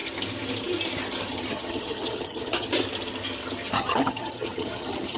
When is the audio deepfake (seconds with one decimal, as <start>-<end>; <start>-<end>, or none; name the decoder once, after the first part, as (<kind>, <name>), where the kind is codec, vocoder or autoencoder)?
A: 1.3-2.7 (vocoder, HiFi-GAN); 3.7-5.2